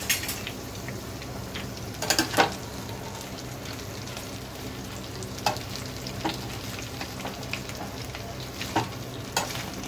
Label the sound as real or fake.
real